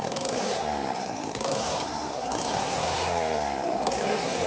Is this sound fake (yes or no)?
yes